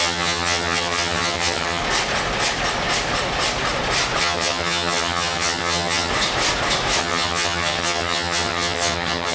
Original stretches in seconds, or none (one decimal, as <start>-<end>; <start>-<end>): 1.8-4.2; 6.1-7.0